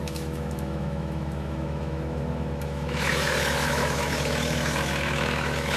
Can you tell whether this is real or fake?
fake